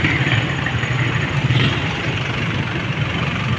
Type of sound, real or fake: fake